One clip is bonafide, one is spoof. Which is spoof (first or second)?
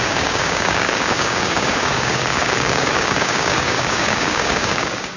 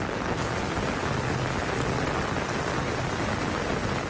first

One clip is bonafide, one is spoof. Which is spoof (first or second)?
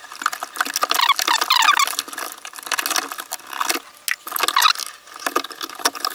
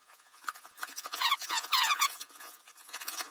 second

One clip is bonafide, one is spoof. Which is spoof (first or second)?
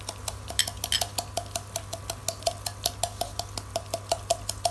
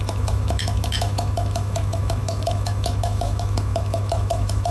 second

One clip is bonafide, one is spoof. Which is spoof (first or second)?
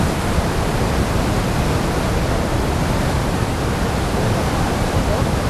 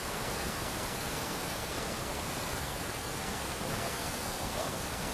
second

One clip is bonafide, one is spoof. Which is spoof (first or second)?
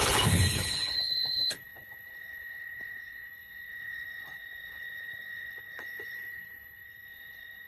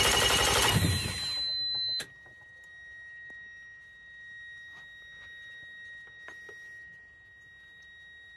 first